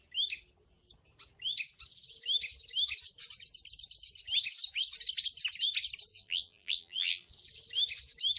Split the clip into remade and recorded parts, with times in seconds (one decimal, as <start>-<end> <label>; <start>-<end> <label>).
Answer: 0.0-6.1 recorded; 6.1-7.3 remade; 7.3-8.4 recorded